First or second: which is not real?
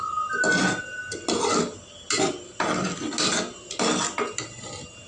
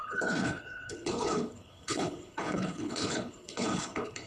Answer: second